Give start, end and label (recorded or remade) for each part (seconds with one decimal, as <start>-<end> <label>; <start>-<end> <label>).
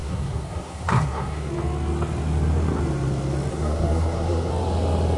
0.0-1.5 remade; 1.5-3.5 recorded; 3.5-4.5 remade; 4.5-5.2 recorded